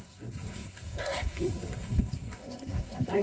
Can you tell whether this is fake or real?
fake